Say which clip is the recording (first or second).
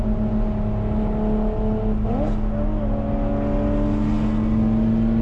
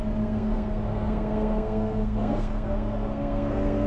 first